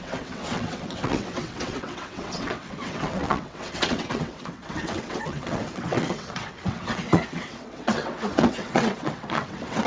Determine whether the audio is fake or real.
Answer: fake